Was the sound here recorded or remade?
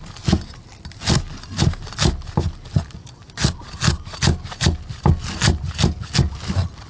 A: recorded